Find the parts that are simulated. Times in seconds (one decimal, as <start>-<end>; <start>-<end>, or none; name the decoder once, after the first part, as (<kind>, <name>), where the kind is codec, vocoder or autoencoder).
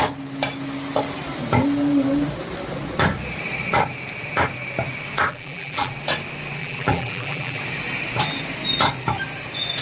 5.3-5.9 (vocoder, BigVGAN v2); 6.6-7.6